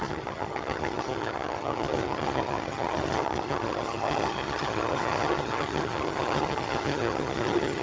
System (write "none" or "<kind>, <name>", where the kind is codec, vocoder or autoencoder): vocoder, HiFi-GAN